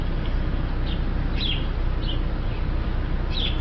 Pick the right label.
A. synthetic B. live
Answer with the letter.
B